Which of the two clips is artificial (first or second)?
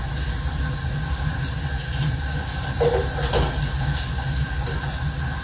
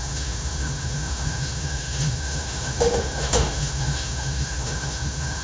second